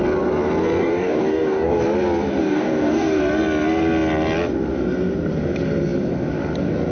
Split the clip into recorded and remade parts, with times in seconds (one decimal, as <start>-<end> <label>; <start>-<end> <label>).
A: 0.0-0.8 recorded; 0.8-1.8 remade; 1.8-2.4 recorded; 2.4-3.2 remade; 3.2-6.9 recorded